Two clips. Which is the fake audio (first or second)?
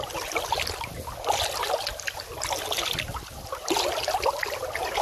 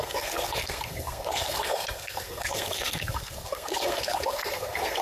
second